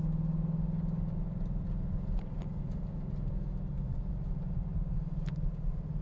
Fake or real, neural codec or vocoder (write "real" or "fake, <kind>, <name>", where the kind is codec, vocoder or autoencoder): real